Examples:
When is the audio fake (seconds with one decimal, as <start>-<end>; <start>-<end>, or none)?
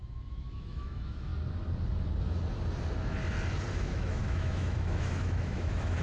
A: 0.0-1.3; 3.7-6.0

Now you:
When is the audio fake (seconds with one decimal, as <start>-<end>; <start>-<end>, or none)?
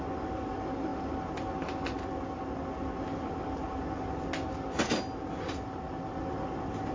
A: none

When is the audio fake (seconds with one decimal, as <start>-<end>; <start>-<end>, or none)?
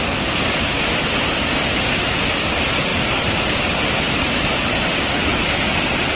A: none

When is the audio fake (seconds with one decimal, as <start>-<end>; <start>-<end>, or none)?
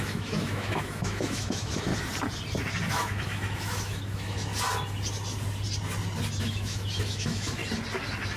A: 0.0-1.9; 2.9-4.5; 6.4-7.6